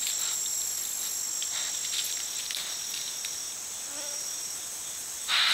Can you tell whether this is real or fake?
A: real